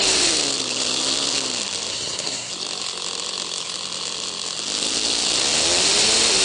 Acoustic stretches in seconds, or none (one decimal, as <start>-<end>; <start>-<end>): 0.0-1.9; 2.5-6.4